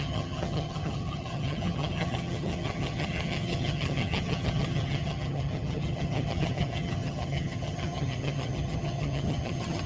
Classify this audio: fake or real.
fake